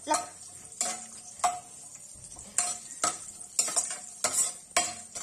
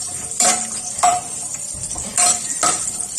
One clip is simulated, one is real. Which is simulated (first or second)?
second